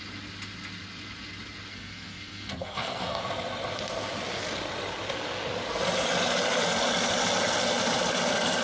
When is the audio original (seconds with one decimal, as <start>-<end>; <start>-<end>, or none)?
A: 0.0-1.7; 3.2-8.6